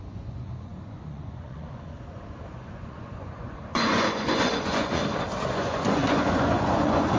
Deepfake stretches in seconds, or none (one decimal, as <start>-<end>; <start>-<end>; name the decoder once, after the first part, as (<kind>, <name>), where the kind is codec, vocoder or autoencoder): 0.0-5.0 (vocoder, Vocos); 5.5-7.2